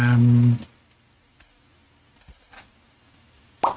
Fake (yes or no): no